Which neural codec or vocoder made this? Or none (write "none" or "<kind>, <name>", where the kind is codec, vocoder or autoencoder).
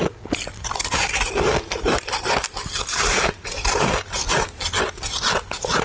none